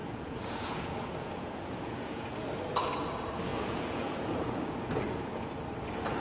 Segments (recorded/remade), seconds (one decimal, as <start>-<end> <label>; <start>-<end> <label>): 0.0-2.3 remade; 2.3-3.5 recorded; 3.5-5.5 remade; 5.5-6.2 recorded

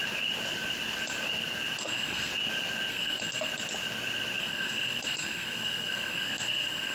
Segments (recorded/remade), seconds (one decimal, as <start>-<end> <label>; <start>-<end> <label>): 0.0-1.8 recorded; 1.8-2.3 remade; 2.3-2.9 recorded; 2.9-3.5 remade; 3.5-4.4 recorded; 4.4-6.9 remade